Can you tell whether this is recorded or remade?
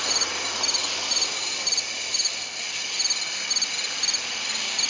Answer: recorded